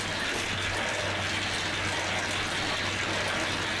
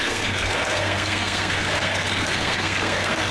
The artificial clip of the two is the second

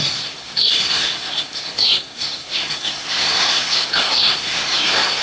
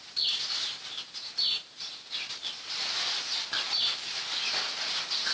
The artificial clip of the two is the first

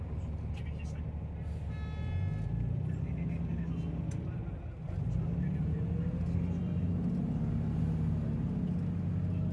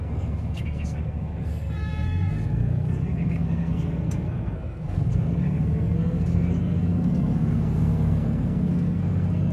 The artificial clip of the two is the second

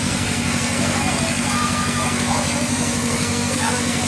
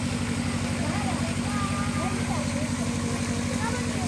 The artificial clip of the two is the first